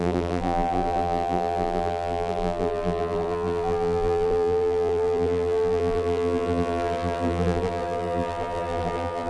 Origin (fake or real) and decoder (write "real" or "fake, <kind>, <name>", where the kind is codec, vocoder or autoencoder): fake, vocoder, BigVGAN v2